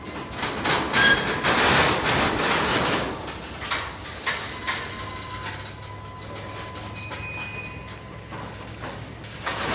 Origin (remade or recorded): recorded